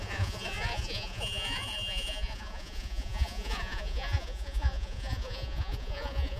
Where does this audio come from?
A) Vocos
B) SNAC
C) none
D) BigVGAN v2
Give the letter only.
A